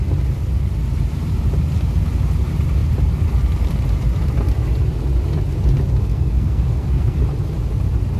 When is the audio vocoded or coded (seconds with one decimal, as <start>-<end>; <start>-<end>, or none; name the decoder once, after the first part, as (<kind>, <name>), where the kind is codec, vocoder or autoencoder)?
6.0-7.2 (codec, SNAC)